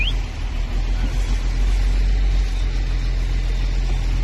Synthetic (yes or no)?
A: no